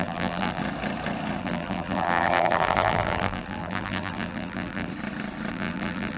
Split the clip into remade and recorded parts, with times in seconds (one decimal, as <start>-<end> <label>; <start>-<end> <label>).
0.0-0.6 remade; 0.6-1.4 recorded; 1.4-4.9 remade; 4.9-5.5 recorded; 5.5-6.2 remade